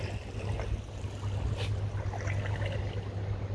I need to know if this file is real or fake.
real